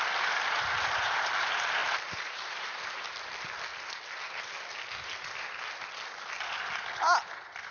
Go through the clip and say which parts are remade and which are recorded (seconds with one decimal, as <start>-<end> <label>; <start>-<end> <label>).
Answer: 0.0-1.8 recorded; 1.8-2.8 remade; 2.8-7.7 recorded